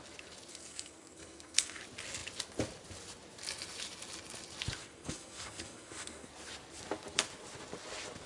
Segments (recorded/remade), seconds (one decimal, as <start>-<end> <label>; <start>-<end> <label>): 0.0-0.5 recorded; 0.5-1.8 remade; 1.8-4.8 recorded; 4.8-6.3 remade; 6.3-8.3 recorded